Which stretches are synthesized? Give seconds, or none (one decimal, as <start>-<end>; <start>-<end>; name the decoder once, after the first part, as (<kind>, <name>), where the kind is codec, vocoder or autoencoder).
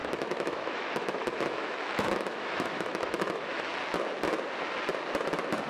0.0-3.7 (autoencoder, DAC-VAE)